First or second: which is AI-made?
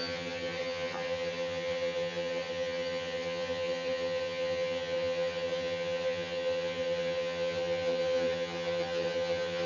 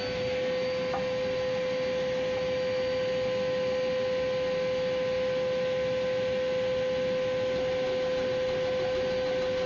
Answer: first